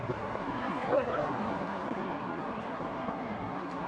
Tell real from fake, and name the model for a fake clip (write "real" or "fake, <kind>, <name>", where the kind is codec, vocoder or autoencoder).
fake, codec, SNAC